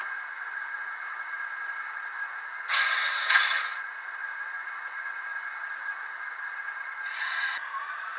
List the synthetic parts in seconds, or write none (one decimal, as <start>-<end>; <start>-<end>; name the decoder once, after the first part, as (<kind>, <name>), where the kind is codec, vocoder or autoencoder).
0.0-8.2 (vocoder, Vocos)